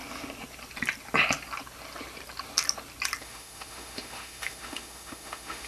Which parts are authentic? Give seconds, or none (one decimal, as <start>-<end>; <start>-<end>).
0.0-3.2